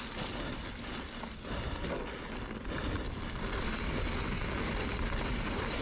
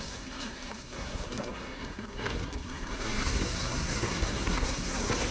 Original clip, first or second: first